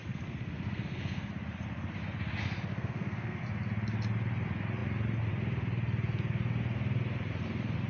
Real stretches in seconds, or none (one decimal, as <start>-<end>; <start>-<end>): 1.3-2.7; 3.4-7.9